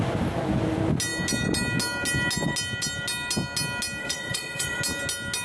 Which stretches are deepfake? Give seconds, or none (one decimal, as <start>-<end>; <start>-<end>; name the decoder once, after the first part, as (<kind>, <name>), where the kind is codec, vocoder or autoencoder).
4.0-4.8 (vocoder, Vocos)